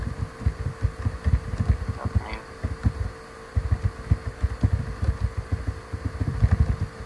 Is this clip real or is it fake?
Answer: real